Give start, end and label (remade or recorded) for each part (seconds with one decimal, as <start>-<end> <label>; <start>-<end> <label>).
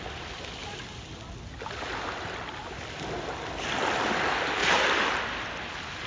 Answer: 0.0-0.6 remade; 0.6-2.6 recorded; 2.6-4.6 remade; 4.6-6.1 recorded